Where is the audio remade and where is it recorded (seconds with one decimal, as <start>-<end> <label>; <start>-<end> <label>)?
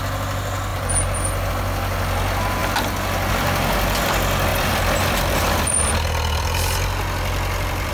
0.0-0.7 recorded; 0.7-1.5 remade; 1.5-4.5 recorded; 4.5-7.9 remade